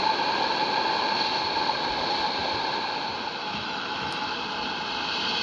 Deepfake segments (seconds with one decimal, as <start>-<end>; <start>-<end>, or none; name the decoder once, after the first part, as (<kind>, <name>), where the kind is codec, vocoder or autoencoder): 3.4-4.3 (autoencoder, DAC-VAE)